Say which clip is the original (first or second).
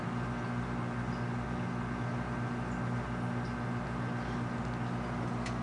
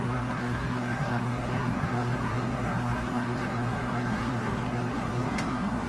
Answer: first